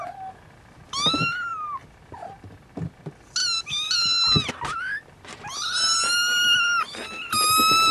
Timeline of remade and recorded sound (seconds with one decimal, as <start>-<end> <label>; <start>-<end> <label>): 0.0-7.9 recorded